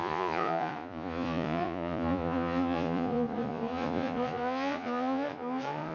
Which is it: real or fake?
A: fake